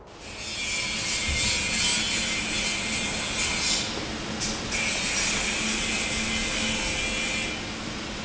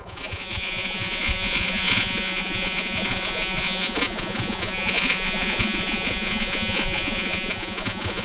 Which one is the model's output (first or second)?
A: second